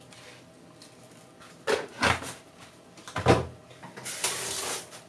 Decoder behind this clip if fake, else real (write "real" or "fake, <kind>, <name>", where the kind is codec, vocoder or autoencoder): real